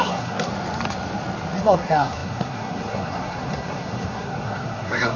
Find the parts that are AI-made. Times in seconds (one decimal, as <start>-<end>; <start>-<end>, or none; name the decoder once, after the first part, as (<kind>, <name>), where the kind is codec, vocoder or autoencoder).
0.0-0.5 (codec, SNAC); 1.6-5.2